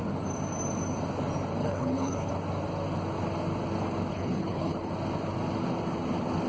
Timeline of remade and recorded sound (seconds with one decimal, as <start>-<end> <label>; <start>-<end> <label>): 0.0-1.6 recorded; 1.6-2.3 remade; 2.3-4.1 recorded; 4.1-4.9 remade; 4.9-6.5 recorded